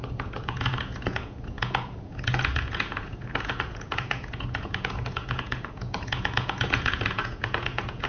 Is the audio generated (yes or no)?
yes